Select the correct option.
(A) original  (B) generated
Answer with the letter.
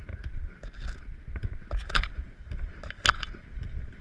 A